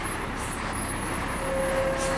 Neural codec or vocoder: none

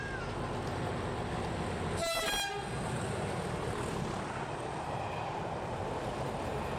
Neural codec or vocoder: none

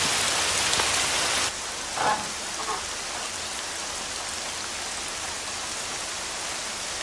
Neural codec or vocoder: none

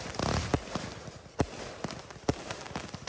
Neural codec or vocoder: none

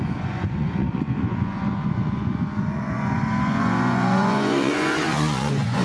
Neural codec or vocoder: vocoder, Vocos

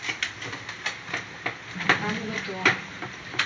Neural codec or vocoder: none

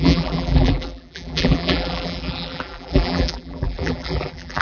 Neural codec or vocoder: vocoder, BigVGAN v2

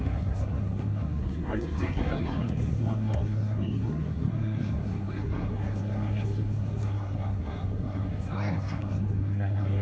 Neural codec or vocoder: codec, SNAC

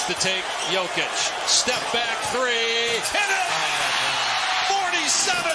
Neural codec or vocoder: none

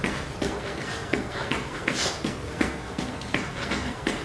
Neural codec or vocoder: codec, SNAC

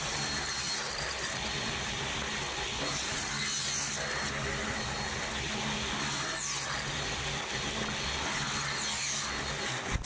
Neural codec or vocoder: none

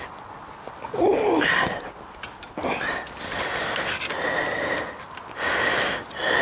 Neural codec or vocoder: none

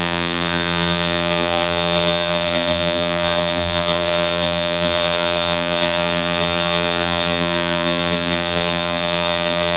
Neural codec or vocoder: vocoder, BigVGAN v2